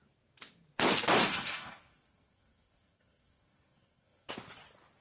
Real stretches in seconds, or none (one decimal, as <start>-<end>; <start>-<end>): 0.0-1.3; 4.3-5.0